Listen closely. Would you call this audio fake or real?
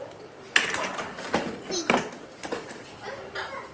real